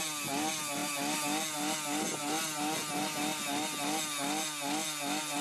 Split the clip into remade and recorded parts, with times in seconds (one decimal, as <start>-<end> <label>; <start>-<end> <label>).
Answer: 0.0-5.4 recorded